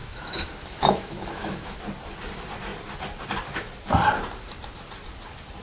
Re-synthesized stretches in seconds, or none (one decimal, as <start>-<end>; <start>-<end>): 0.0-1.8